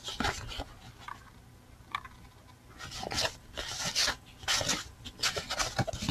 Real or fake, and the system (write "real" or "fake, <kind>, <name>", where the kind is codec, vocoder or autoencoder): real